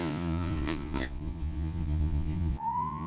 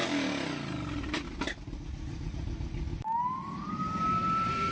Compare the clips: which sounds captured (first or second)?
second